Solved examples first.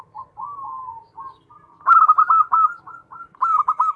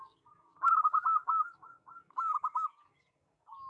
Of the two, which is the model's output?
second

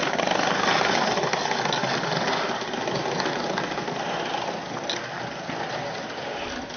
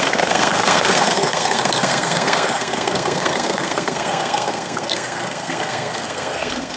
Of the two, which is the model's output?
second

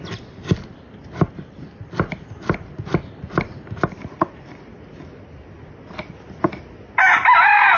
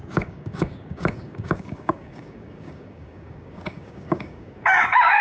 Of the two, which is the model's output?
second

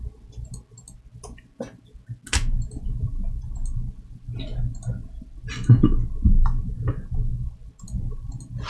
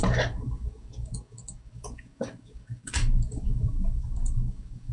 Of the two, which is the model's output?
second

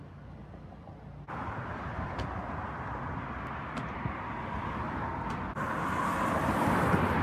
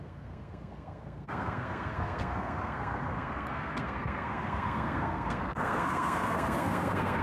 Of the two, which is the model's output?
second